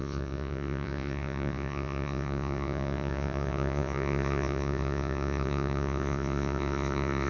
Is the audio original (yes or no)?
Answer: no